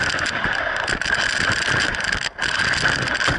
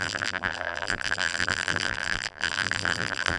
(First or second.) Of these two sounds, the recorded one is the first